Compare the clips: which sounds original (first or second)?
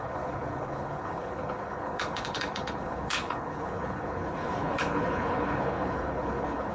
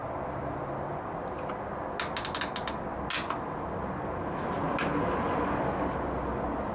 second